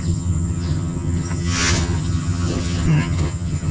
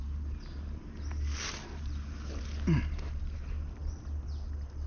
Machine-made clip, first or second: first